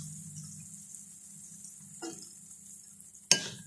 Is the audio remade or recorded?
recorded